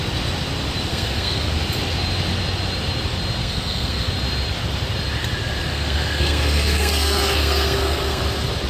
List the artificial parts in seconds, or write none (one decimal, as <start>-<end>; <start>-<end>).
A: 0.9-1.5; 3.4-4.1; 5.7-8.2